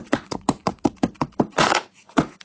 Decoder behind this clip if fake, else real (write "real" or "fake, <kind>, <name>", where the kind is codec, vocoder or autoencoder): fake, vocoder, Vocos